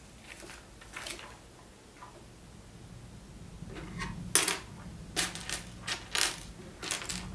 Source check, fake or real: real